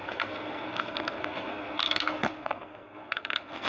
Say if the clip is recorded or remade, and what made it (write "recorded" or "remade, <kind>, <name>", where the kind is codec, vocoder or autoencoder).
remade, codec, SNAC